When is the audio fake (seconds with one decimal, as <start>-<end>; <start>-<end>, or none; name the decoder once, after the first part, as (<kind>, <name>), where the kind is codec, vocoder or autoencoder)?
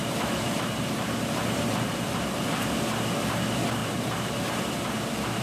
0.0-2.5 (vocoder, BigVGAN v2); 3.8-4.5